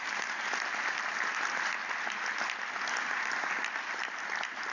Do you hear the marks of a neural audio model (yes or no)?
no